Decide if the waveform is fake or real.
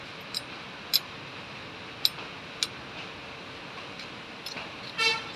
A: real